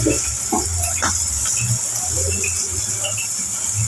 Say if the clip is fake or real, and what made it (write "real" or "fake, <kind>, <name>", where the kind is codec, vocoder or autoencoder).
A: real